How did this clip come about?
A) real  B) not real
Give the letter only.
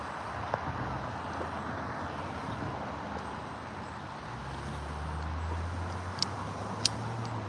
A